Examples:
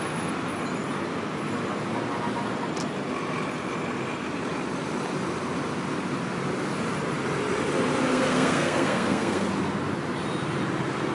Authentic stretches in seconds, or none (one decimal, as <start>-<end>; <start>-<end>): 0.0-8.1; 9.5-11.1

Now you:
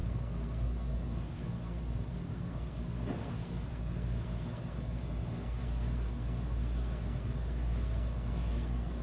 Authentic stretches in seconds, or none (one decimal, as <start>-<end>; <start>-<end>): none

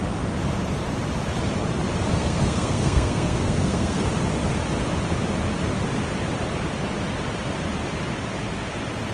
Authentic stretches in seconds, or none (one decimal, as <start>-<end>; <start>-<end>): 0.0-2.1; 4.1-9.1

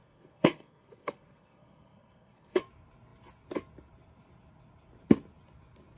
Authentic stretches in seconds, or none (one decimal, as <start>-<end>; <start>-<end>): 2.6-6.0